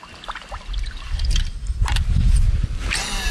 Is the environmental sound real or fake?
real